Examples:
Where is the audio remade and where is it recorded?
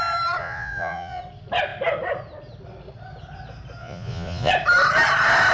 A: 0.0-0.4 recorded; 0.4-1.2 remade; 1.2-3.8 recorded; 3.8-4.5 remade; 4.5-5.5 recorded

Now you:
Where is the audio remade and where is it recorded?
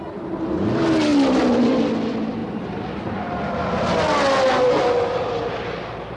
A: 0.0-6.2 recorded